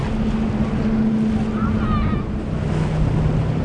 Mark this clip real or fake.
real